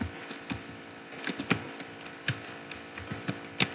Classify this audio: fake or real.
real